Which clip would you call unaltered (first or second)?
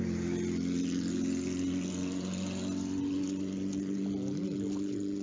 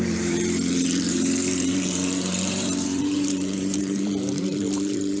first